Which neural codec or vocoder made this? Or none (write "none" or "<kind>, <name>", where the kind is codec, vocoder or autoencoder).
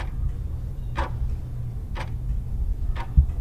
none